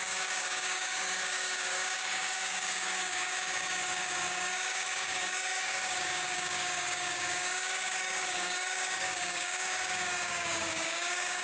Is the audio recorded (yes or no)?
no